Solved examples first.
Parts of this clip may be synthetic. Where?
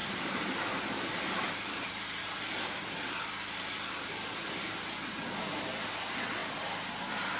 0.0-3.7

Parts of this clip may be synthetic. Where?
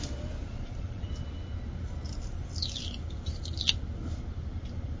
0.4-1.1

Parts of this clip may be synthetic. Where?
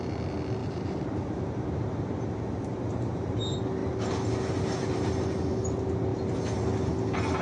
0.6-3.4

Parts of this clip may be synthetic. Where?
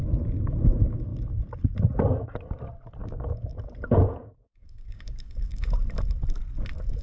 3.0-3.6; 4.2-5.6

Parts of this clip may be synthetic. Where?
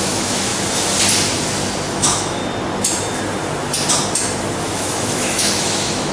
0.0-0.5; 1.9-2.4; 4.6-6.1